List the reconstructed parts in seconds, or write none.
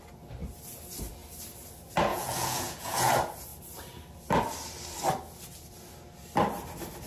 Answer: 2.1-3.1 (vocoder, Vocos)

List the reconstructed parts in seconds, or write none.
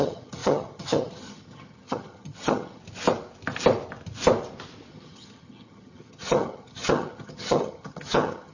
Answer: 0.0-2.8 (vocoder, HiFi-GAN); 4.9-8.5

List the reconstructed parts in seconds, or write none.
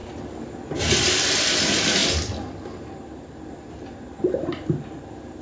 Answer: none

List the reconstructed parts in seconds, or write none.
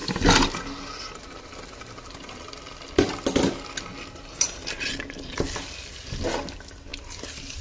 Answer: none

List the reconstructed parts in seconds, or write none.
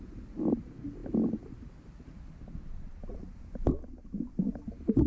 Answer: none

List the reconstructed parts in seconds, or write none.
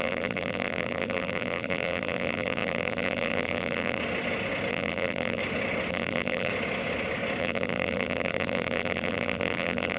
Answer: 0.0-4.0 (vocoder, BigVGAN v2); 4.7-5.4; 5.9-6.5; 7.4-10.0